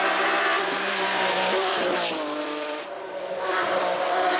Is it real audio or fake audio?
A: fake